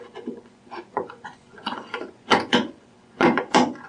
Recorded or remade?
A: remade